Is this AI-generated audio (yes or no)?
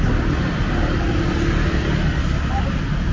no